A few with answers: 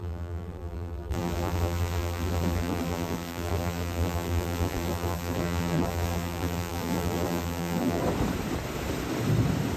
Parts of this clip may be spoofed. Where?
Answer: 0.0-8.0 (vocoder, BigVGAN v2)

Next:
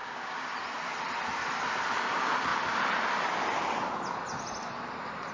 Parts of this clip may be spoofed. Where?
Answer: 0.0-0.5 (codec, DAC)

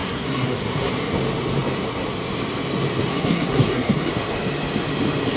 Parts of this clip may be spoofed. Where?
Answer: 0.0-0.9 (codec, SNAC); 3.1-4.1

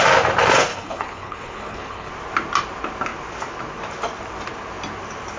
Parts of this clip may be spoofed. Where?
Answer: 0.7-2.1 (codec, HILCodec)

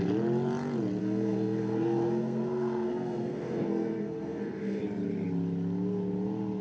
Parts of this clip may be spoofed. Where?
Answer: 1.0-4.8 (codec, SNAC)

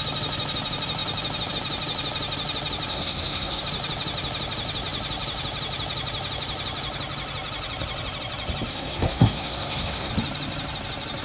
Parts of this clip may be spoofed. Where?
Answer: 2.9-3.6 (codec, SNAC); 8.7-10.1

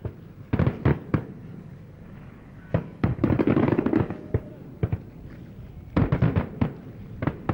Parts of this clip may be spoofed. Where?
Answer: 0.9-4.5 (codec, DAC)

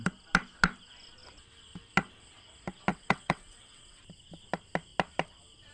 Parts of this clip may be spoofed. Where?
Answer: 2.9-4.0 (vocoder, WaveNeXt)